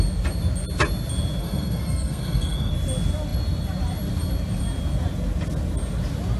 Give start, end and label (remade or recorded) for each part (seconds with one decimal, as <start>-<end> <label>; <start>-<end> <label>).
0.0-1.4 recorded; 1.4-2.7 remade; 2.7-6.4 recorded